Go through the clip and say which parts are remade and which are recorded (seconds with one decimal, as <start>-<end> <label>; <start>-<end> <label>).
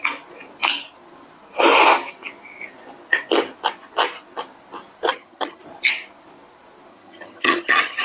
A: 0.0-5.1 recorded; 5.1-5.6 remade; 5.6-6.9 recorded; 6.9-8.0 remade